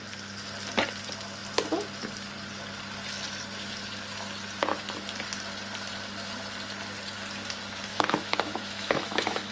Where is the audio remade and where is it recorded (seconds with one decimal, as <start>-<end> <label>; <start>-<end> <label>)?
0.0-7.9 recorded; 7.9-9.5 remade